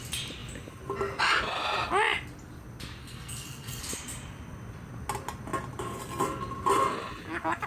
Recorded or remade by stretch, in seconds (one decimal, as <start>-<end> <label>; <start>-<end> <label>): 0.0-3.0 recorded; 3.0-3.8 remade; 3.8-7.7 recorded